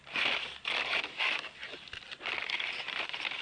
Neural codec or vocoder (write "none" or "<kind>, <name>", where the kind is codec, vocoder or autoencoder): none